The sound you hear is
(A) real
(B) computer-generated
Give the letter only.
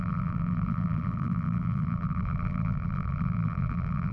B